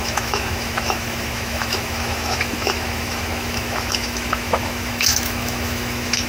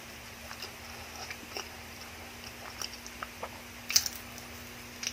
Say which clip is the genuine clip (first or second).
second